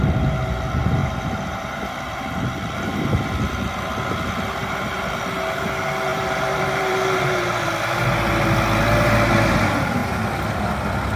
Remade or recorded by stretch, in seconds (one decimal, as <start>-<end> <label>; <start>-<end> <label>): 0.0-1.0 recorded; 1.0-1.8 remade; 1.8-6.1 recorded; 6.1-7.7 remade; 7.7-11.2 recorded